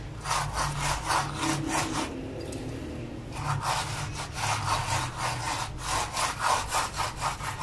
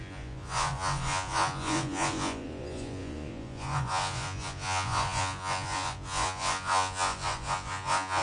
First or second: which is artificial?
second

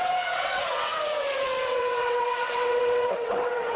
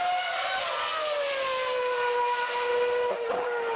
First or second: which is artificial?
first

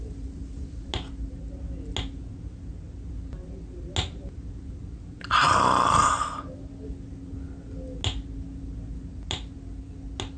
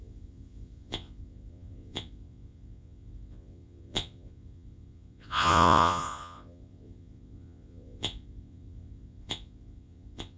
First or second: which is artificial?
second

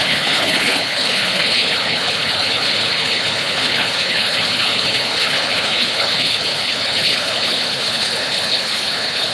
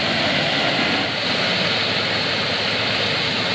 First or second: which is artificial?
first